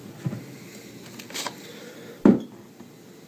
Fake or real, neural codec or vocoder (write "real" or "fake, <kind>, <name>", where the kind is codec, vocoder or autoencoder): real